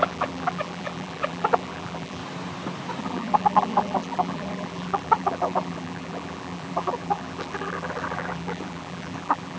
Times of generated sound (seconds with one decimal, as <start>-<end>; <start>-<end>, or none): 0.0-2.2; 3.0-9.6